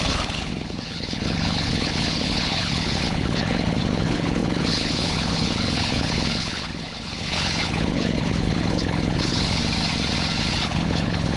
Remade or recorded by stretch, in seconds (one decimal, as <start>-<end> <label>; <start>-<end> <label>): 0.0-9.6 remade; 9.6-10.5 recorded; 10.5-11.4 remade